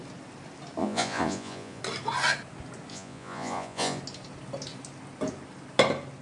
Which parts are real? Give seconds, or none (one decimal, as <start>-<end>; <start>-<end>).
0.0-0.8; 1.8-2.9; 4.0-6.2